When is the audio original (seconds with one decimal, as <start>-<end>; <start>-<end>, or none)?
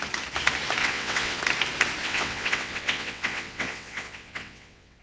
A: 0.0-0.8; 1.4-2.0